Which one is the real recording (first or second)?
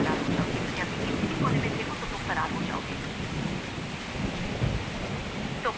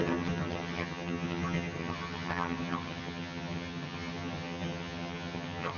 first